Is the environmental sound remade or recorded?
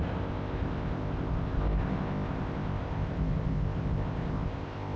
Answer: remade